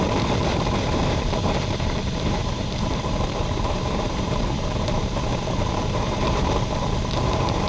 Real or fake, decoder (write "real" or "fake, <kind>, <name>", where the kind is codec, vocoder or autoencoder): fake, vocoder, BigVGAN v2